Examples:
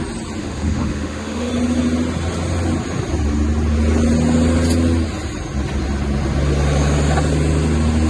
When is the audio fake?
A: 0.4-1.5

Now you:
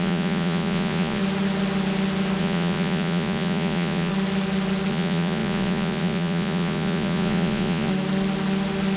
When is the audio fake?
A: 0.0-1.2; 2.4-4.1; 4.9-7.9

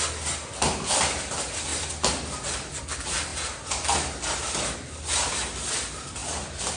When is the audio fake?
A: none

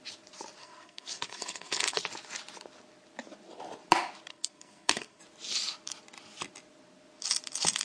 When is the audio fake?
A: 0.6-2.0; 4.3-5.2